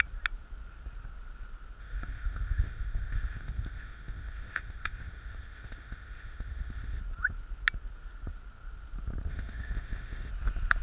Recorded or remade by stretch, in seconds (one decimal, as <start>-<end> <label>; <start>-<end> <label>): 0.0-1.8 recorded; 1.8-7.0 remade; 7.0-9.3 recorded; 9.3-10.3 remade; 10.3-10.8 recorded